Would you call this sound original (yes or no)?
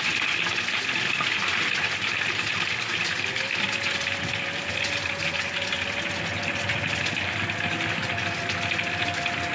yes